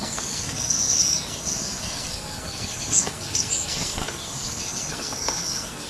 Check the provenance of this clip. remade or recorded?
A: remade